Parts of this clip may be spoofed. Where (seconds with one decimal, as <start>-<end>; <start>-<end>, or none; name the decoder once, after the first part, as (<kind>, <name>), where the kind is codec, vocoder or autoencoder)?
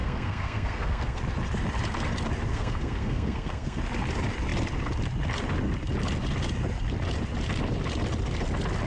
0.0-1.2 (codec, SNAC); 2.5-3.8